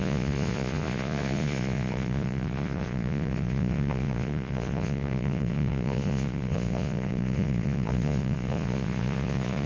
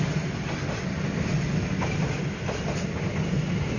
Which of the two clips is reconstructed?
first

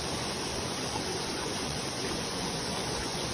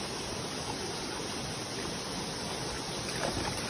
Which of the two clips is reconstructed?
first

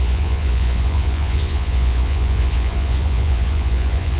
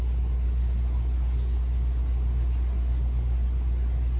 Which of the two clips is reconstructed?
first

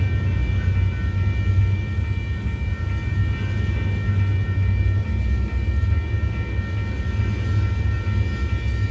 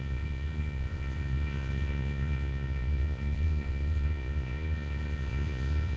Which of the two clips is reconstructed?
second